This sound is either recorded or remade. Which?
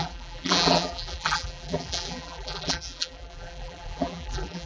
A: remade